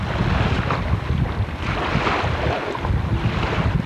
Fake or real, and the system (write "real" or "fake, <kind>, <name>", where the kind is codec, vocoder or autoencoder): real